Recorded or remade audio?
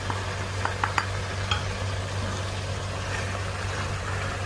recorded